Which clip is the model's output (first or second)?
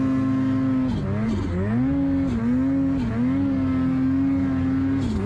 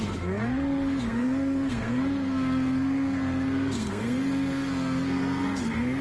second